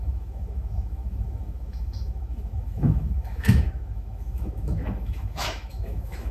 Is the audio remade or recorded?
remade